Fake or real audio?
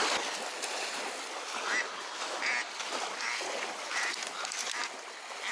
real